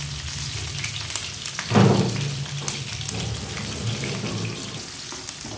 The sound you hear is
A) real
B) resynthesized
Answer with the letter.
A